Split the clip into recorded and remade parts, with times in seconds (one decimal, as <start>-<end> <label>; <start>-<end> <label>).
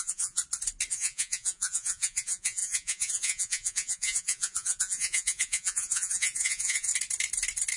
0.0-0.4 remade; 0.4-0.9 recorded; 0.9-6.9 remade; 6.9-7.8 recorded